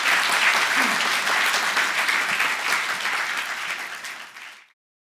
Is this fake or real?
real